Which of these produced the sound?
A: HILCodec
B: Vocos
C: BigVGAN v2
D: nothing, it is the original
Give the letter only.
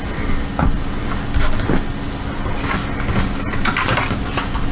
D